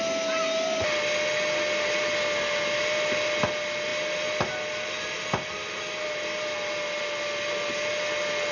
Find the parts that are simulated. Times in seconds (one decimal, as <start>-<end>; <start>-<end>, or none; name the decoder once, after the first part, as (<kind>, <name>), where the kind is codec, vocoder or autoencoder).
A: none